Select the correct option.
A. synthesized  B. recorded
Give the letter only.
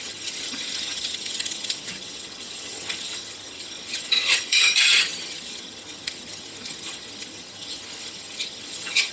A